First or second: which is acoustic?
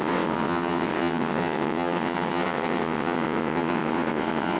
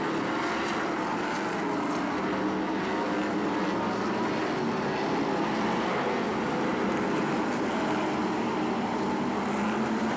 second